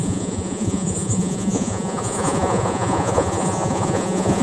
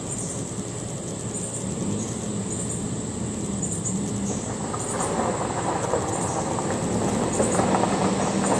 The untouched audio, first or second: second